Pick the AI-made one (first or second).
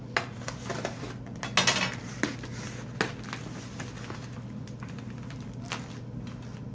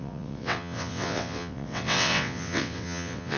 second